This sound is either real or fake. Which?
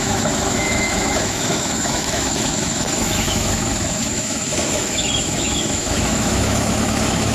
fake